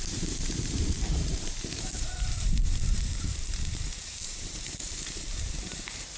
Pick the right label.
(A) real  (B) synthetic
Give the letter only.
B